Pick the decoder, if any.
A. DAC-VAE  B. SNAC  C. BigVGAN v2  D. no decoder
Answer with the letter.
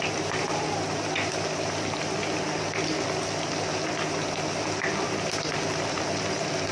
D